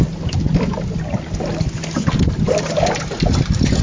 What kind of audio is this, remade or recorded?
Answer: recorded